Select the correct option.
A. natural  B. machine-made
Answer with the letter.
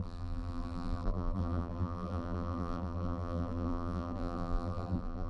B